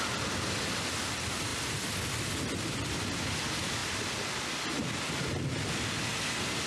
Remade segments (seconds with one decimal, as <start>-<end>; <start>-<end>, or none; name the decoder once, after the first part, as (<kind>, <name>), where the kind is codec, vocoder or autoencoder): none